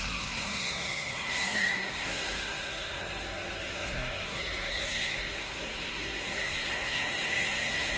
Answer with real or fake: fake